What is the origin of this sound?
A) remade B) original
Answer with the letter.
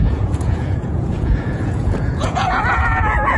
A